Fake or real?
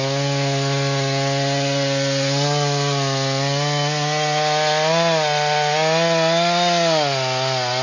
real